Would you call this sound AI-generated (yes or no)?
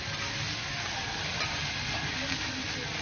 no